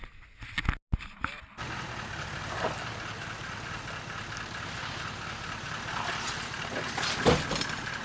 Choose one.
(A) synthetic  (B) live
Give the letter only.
B